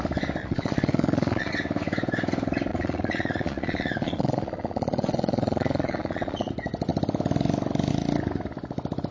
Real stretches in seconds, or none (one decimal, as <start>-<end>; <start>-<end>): 0.0-0.4; 1.5-2.7; 6.5-9.1